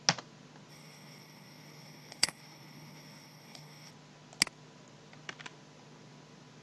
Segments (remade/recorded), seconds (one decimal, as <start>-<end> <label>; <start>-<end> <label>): 0.0-0.7 recorded; 0.7-3.9 remade; 3.9-6.6 recorded